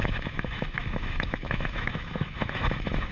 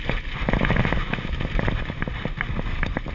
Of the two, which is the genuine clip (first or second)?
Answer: second